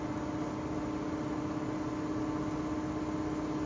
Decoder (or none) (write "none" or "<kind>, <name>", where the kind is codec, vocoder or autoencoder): none